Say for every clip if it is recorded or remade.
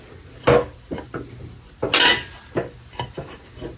recorded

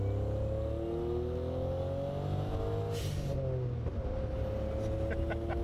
recorded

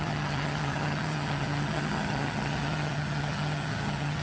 remade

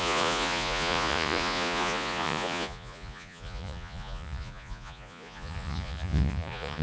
remade